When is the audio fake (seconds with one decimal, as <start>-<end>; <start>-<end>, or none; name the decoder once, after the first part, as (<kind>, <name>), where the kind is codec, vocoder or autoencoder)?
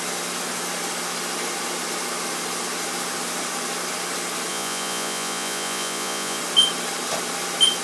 4.5-6.4 (vocoder, Vocos)